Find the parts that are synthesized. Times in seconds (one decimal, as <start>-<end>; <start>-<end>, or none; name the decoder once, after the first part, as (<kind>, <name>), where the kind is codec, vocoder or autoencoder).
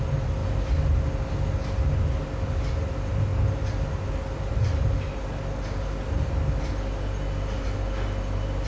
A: none